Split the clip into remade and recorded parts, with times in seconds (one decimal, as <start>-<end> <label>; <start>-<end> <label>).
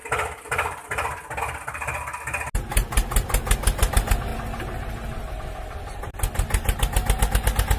0.0-1.4 remade; 1.4-2.7 recorded; 2.7-3.9 remade; 3.9-7.8 recorded